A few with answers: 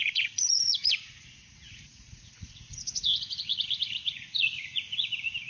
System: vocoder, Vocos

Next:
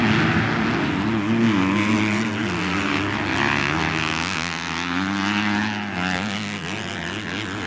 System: none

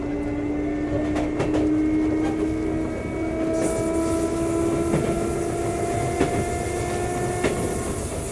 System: none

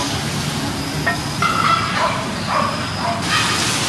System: none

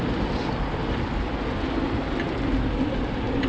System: none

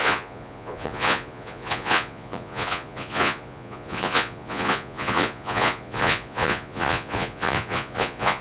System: vocoder, Vocos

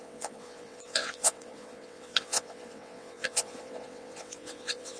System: vocoder, WaveNeXt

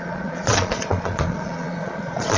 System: vocoder, Vocos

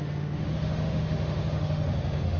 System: autoencoder, DAC-VAE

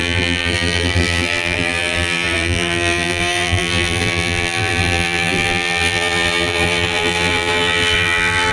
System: vocoder, BigVGAN v2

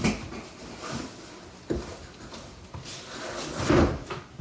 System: none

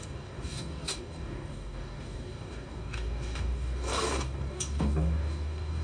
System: codec, DAC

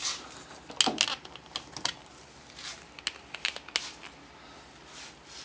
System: none